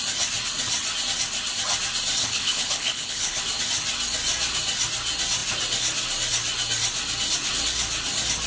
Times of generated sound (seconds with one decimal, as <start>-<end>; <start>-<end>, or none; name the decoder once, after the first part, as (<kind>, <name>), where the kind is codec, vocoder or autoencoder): 2.2-3.4 (codec, HILCodec)